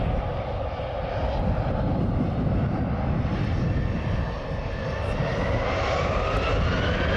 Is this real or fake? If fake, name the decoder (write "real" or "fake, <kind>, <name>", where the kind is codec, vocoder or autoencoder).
real